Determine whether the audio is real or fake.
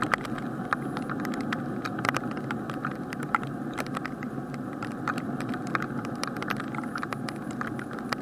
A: real